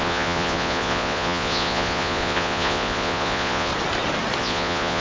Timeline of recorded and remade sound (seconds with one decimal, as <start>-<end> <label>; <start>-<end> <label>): 0.0-3.7 remade; 3.7-4.4 recorded; 4.4-5.0 remade